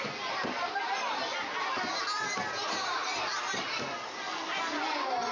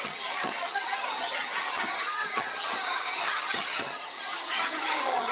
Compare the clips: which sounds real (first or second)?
first